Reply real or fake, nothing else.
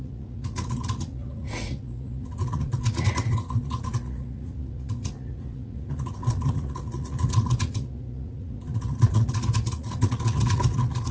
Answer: fake